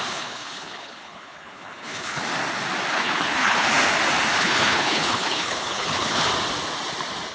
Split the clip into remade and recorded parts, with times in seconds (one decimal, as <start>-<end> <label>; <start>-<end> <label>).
0.0-2.2 remade; 2.2-2.9 recorded; 2.9-3.7 remade; 3.7-4.4 recorded; 4.4-6.3 remade; 6.3-7.3 recorded